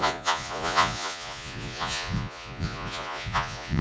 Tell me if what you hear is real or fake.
fake